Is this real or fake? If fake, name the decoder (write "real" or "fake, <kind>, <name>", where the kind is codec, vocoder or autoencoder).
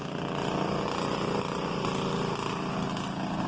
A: real